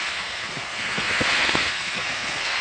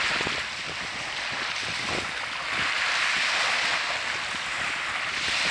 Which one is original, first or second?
second